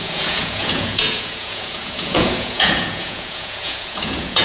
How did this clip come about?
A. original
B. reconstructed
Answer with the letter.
B